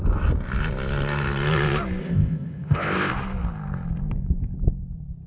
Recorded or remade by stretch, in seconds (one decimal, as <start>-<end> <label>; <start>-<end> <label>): 0.0-2.0 recorded; 2.0-3.1 remade; 3.1-5.3 recorded